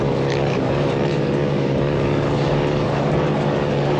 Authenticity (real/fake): fake